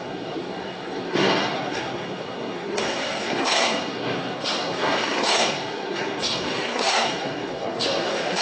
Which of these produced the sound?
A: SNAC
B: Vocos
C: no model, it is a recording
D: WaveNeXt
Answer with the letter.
A